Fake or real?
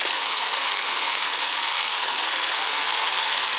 fake